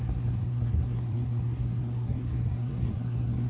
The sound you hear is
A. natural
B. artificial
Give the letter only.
B